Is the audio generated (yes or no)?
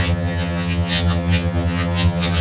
yes